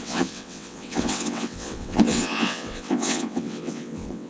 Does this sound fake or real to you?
fake